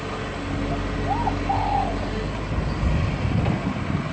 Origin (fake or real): real